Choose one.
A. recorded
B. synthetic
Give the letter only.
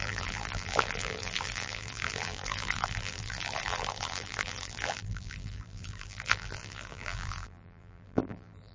B